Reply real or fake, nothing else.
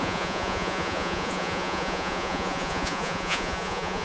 fake